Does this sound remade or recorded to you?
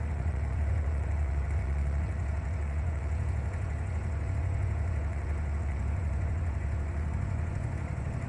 remade